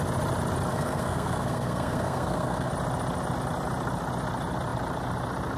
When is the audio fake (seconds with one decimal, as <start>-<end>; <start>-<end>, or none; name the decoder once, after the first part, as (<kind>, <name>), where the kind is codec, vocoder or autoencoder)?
0.7-2.7 (codec, SNAC)